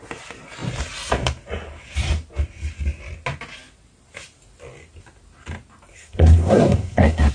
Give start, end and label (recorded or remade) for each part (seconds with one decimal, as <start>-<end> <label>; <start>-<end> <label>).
0.0-5.9 recorded; 5.9-7.3 remade